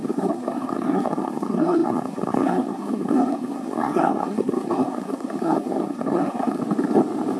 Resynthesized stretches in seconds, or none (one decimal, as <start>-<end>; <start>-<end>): 0.0-6.6